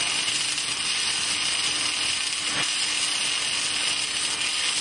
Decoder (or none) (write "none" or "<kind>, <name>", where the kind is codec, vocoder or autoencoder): none